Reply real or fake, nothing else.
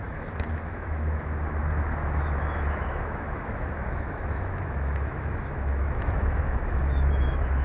fake